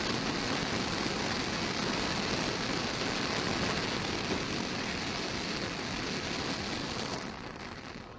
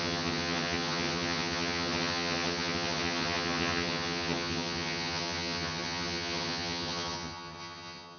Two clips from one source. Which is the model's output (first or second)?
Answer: second